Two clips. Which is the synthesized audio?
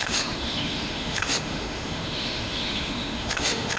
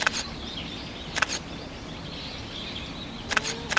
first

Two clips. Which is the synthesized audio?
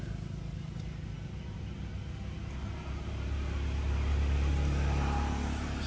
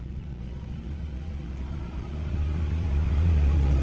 second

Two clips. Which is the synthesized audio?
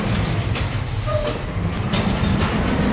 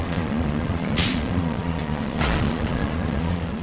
second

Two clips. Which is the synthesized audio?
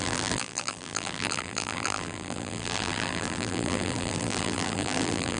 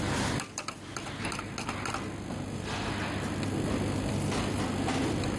first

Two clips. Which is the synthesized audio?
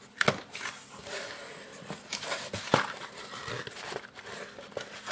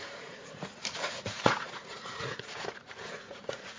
second